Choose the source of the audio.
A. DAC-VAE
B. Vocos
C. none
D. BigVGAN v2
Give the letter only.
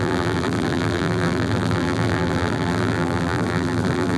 D